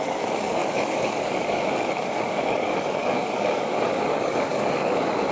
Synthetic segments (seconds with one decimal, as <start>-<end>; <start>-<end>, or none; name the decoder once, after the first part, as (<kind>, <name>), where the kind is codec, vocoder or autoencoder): 0.0-5.3 (codec, DAC)